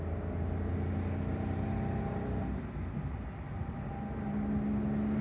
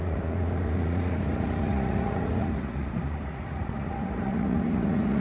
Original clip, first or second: first